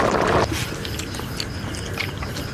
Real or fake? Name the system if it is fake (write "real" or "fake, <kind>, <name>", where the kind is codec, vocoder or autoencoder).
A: real